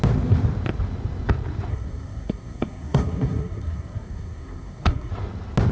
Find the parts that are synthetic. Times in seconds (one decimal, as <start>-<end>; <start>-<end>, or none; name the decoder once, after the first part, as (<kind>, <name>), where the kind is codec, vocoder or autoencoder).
1.7-5.1 (codec, SNAC)